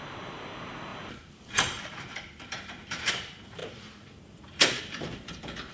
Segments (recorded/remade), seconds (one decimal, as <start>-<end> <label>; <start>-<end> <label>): 0.0-5.7 remade